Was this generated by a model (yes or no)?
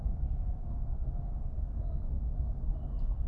yes